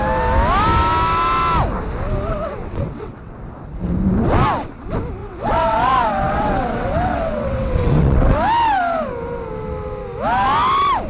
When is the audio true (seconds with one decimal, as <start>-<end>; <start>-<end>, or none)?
0.0-2.3; 3.3-5.2; 8.3-11.1